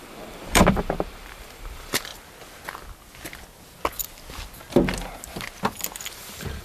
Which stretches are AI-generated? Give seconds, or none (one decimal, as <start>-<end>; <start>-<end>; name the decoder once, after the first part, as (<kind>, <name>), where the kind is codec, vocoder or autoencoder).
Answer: 0.0-2.1 (vocoder, BigVGAN v2); 6.1-6.6